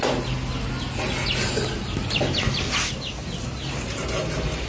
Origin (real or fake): real